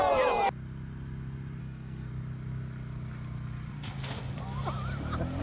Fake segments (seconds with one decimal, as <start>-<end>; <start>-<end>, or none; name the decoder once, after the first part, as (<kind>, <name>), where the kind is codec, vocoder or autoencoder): 1.6-2.1 (codec, SNAC)